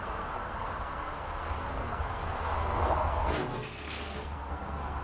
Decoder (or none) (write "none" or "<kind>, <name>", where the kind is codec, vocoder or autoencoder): codec, SNAC